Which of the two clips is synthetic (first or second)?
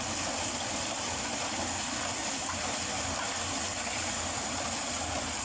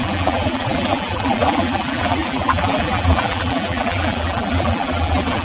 second